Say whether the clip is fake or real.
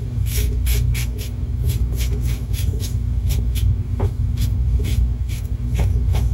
fake